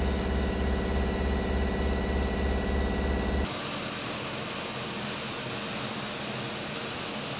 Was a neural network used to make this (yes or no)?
no